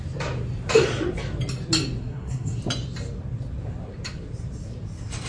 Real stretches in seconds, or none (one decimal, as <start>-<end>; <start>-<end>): 0.0-2.0; 2.6-5.3